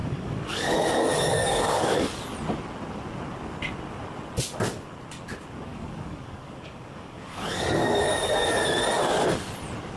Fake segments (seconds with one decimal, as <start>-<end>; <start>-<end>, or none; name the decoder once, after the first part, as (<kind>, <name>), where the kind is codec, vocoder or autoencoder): 0.0-2.1 (codec, DAC); 5.7-8.6

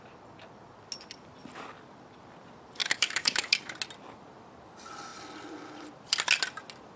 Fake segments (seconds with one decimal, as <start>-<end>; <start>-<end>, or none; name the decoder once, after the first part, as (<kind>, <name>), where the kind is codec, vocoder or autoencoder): 2.8-3.6 (codec, DAC)